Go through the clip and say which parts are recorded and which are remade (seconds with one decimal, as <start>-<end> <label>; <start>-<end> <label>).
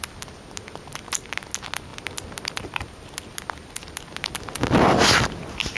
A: 0.0-5.8 recorded